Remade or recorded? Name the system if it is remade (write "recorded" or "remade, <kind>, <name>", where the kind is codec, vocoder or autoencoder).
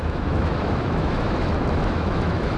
remade, autoencoder, DAC-VAE